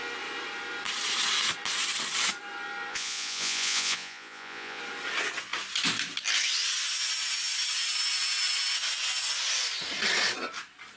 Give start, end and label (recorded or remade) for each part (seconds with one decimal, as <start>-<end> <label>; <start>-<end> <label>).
0.0-2.9 recorded; 2.9-4.8 remade; 4.8-11.0 recorded

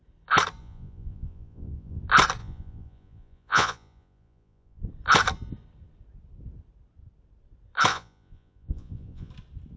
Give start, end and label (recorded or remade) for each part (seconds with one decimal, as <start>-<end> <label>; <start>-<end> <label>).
0.0-0.6 recorded; 0.6-2.0 remade; 2.0-2.4 recorded; 2.4-4.8 remade; 4.8-7.9 recorded; 7.9-9.3 remade; 9.3-9.8 recorded

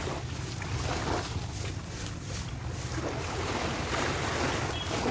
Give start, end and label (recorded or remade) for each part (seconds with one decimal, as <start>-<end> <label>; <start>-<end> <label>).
0.0-5.1 recorded

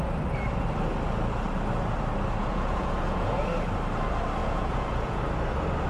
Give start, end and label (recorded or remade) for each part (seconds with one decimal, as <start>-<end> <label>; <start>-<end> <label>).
0.0-2.4 recorded; 2.4-3.4 remade; 3.4-4.4 recorded; 4.4-5.2 remade; 5.2-5.9 recorded

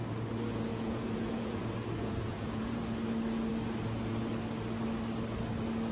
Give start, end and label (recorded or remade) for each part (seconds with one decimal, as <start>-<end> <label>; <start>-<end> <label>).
0.0-0.7 recorded; 0.7-1.6 remade; 1.6-2.0 recorded; 2.0-2.8 remade; 2.8-5.9 recorded

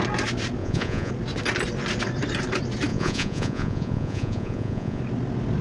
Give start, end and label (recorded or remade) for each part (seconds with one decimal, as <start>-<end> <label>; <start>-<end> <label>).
0.0-0.6 recorded; 0.6-1.1 remade; 1.1-2.9 recorded; 2.9-5.0 remade; 5.0-5.6 recorded